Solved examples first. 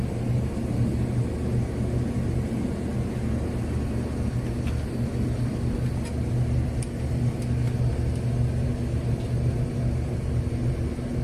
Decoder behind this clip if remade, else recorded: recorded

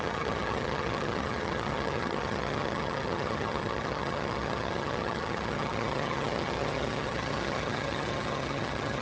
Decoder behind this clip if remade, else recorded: remade, vocoder, HiFi-GAN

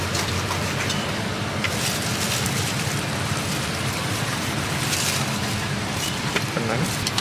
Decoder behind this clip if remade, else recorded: remade, vocoder, BigVGAN v2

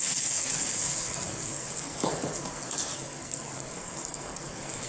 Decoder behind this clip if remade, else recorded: remade, codec, SNAC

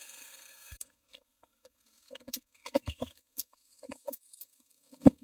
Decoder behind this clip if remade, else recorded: remade, codec, SNAC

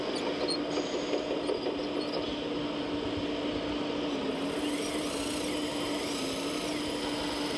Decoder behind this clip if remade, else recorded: recorded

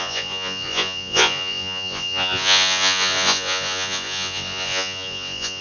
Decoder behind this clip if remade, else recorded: remade, vocoder, Vocos